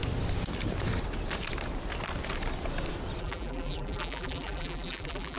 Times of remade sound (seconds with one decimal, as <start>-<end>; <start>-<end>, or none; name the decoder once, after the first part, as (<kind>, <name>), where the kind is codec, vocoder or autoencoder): 3.2-5.4 (vocoder, BigVGAN v2)